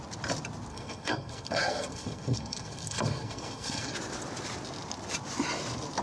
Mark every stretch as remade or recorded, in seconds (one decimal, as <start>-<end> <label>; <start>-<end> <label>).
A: 0.0-0.7 recorded; 0.7-3.9 remade; 3.9-6.0 recorded